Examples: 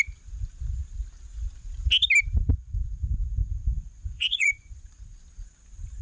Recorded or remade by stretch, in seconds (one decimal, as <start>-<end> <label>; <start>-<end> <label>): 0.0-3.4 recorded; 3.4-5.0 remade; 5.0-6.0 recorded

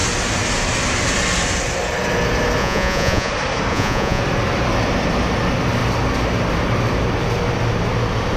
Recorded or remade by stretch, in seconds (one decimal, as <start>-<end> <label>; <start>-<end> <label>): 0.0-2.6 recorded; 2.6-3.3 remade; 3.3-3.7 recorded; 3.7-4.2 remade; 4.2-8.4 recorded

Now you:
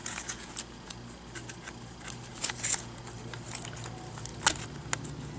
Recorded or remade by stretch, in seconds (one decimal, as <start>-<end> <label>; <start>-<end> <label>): 0.0-0.9 remade; 0.9-2.3 recorded; 2.3-3.0 remade; 3.0-5.4 recorded

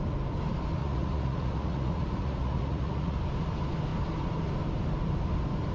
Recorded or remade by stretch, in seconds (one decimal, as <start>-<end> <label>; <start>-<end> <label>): 0.0-0.8 recorded; 0.8-3.2 remade; 3.2-5.7 recorded

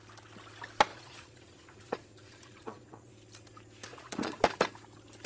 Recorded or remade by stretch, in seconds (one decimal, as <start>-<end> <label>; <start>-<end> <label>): 0.0-0.9 recorded; 0.9-3.1 remade; 3.1-3.9 recorded; 3.9-4.4 remade; 4.4-5.3 recorded

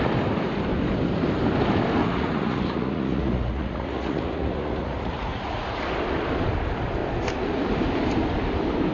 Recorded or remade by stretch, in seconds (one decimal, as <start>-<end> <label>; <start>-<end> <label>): 0.0-2.0 recorded; 2.0-5.8 remade; 5.8-8.9 recorded

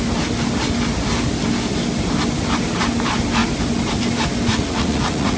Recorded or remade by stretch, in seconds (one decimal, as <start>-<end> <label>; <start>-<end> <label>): 0.0-4.5 recorded; 4.5-5.4 remade